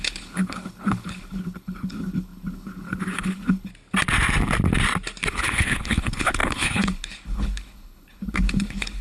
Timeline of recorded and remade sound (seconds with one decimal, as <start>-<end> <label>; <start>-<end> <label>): 0.0-3.7 remade; 3.7-5.3 recorded; 5.3-9.0 remade